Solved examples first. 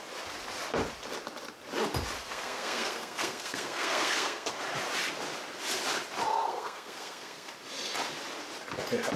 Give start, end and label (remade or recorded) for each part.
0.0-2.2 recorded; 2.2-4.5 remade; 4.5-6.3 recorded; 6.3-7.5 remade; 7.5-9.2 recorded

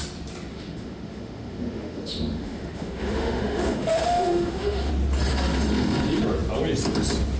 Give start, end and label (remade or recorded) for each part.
0.0-0.5 recorded; 0.5-4.9 remade; 4.9-7.4 recorded

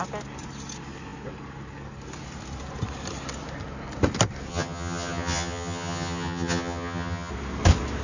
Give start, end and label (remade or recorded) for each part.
0.0-4.5 recorded; 4.5-7.3 remade; 7.3-8.0 recorded